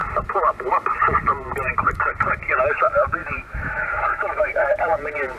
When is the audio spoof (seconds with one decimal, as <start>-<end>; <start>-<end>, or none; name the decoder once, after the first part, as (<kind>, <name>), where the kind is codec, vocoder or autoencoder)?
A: 3.2-4.8 (autoencoder, DAC-VAE)